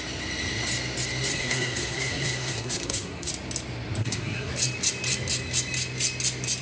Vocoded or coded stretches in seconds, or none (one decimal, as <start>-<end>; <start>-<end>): 1.3-3.3; 4.0-4.5